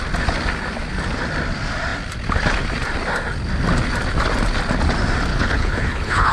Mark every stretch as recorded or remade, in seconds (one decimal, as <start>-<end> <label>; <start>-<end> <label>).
0.0-5.3 recorded; 5.3-6.3 remade